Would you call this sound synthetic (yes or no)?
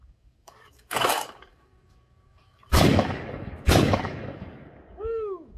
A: yes